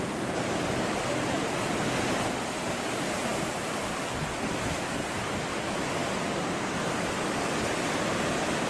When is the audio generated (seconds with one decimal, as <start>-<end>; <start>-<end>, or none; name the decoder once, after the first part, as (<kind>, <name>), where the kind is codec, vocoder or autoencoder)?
none